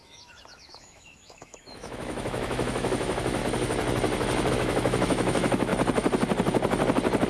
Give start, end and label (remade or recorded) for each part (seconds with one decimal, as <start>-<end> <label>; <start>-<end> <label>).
0.0-3.4 remade; 3.4-4.5 recorded; 4.5-5.7 remade; 5.7-7.3 recorded